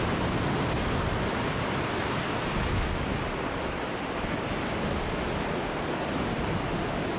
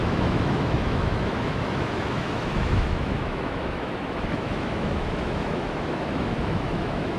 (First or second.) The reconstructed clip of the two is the second